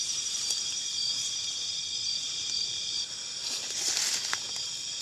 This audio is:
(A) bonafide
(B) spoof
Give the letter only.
A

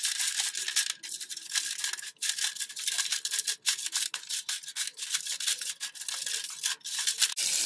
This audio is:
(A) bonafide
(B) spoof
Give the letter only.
A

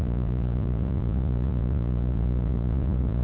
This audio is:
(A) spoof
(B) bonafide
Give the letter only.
A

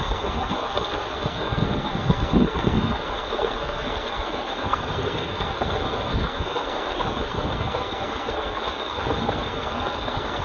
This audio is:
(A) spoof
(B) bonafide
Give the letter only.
A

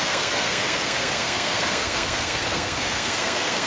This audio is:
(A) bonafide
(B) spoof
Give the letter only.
B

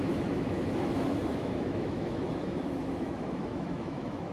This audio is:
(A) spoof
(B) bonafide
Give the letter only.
A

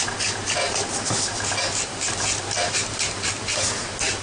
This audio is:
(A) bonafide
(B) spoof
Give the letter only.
A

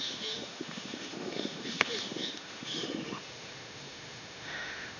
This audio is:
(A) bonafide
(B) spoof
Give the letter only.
B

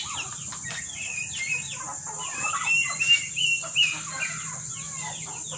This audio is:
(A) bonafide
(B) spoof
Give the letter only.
A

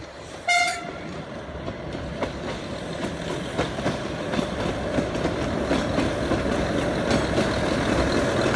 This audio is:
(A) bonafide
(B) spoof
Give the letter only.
A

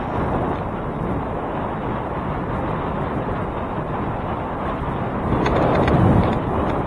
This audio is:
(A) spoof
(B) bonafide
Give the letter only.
B